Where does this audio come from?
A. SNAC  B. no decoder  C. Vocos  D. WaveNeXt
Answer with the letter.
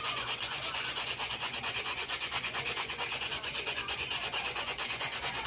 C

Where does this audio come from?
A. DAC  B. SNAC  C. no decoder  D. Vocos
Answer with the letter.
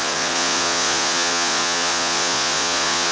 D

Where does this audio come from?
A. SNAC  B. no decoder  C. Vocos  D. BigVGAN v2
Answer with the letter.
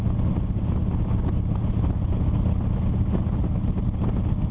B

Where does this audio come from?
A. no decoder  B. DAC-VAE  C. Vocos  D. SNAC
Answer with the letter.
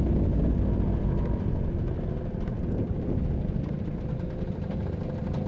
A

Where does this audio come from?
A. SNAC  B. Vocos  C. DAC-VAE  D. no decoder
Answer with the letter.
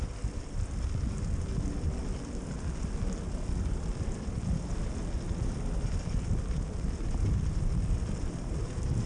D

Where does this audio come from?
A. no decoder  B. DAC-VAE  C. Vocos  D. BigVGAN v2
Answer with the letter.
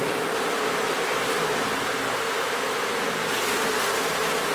A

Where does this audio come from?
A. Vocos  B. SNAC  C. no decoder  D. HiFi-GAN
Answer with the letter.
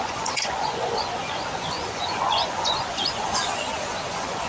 A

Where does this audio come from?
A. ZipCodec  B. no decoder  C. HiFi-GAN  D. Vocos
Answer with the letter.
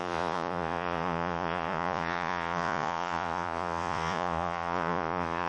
D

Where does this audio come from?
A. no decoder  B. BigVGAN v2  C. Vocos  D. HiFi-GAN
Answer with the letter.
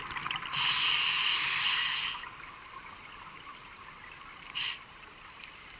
A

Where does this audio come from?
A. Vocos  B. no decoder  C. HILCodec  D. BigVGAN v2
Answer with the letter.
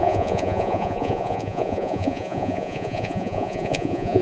A